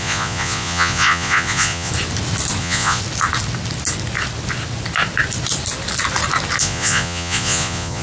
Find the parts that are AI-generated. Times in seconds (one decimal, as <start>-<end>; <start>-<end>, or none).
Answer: 0.0-1.9; 2.6-3.0; 6.6-8.0